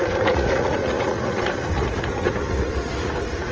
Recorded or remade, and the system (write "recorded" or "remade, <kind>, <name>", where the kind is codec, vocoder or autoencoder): remade, vocoder, Vocos